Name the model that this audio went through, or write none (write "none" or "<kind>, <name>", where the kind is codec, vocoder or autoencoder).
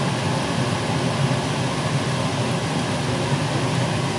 none